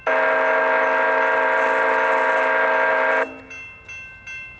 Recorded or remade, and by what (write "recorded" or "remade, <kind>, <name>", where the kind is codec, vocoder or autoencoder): recorded